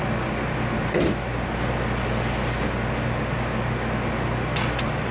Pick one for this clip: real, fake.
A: real